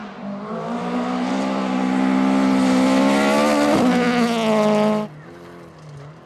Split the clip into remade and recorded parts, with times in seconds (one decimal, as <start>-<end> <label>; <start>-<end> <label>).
0.0-1.3 remade; 1.3-6.3 recorded